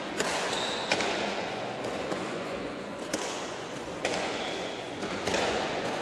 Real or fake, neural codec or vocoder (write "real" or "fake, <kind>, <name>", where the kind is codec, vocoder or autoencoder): fake, vocoder, Vocos